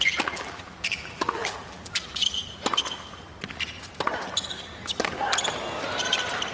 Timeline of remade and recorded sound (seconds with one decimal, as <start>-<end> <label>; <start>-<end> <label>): 0.0-2.4 remade; 2.4-6.5 recorded